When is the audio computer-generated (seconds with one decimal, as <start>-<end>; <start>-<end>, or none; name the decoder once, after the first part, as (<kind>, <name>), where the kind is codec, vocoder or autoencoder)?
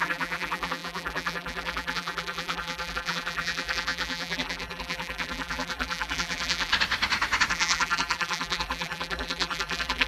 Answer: 0.0-6.7 (vocoder, BigVGAN v2); 7.5-10.1